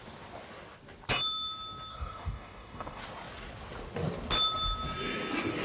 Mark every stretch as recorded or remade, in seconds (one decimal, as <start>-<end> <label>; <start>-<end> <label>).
0.0-1.9 recorded; 1.9-3.0 remade; 3.0-5.6 recorded